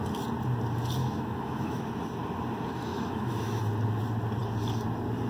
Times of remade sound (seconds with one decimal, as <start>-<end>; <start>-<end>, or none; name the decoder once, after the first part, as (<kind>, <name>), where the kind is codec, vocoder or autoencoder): 1.0-1.8 (autoencoder, DAC-VAE); 2.9-3.6